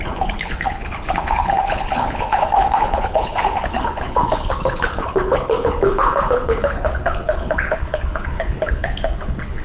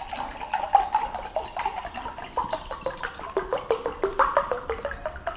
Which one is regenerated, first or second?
first